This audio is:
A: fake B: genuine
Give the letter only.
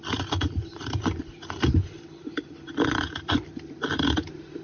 A